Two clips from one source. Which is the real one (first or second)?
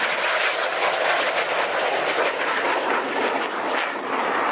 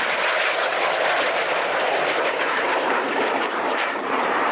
first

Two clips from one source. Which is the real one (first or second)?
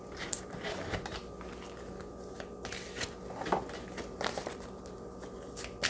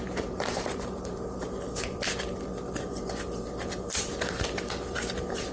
first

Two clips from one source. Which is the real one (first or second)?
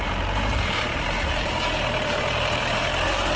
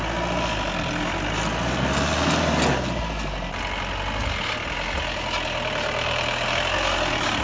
second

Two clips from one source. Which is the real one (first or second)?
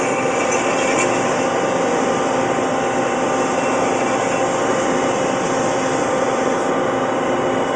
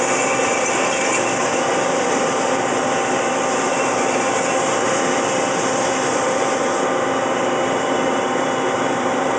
first